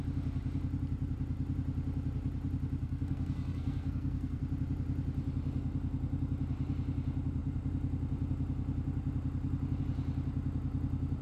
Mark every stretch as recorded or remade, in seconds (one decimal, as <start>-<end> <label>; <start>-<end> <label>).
0.0-2.8 recorded; 2.8-4.4 remade; 4.4-11.2 recorded